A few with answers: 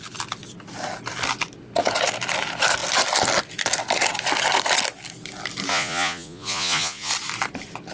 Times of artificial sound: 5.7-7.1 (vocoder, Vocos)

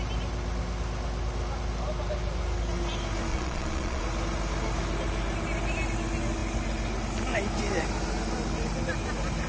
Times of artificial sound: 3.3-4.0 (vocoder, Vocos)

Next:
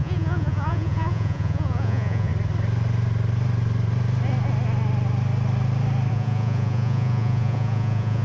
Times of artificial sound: 0.0-2.3 (vocoder, Vocos); 6.1-8.2

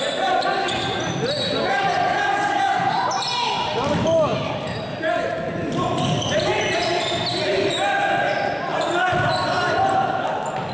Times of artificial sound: none

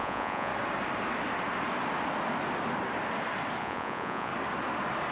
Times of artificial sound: 0.0-0.5 (vocoder, Vocos); 3.6-4.3

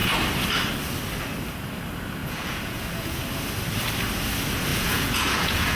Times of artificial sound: 2.2-3.2 (vocoder, Vocos); 4.7-5.8

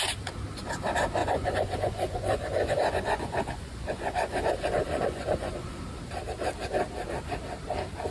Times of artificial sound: 1.2-5.8 (vocoder, Vocos)

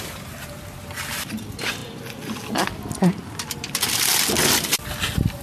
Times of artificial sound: none